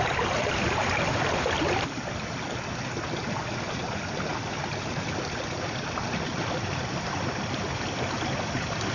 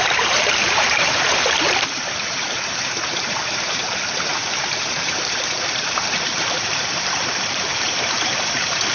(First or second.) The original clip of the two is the first